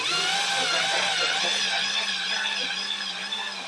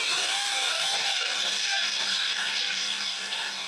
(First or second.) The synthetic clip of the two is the second